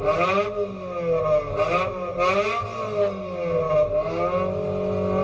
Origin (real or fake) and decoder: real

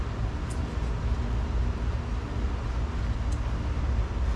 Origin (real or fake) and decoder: real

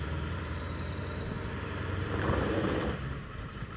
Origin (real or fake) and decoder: fake, vocoder, BigVGAN v2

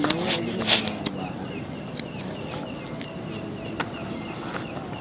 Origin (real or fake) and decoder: real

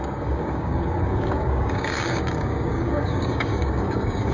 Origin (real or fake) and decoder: fake, codec, DAC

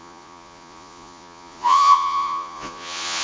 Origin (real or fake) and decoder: fake, vocoder, Vocos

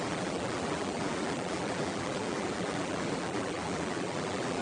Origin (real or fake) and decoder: fake, vocoder, BigVGAN v2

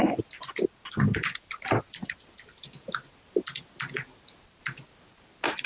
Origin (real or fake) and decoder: real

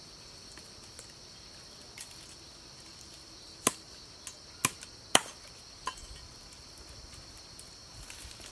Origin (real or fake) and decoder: real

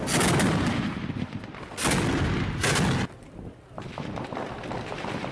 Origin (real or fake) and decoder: real